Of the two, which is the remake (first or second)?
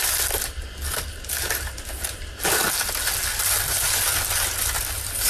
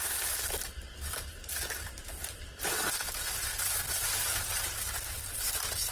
second